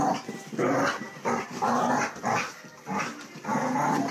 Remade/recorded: recorded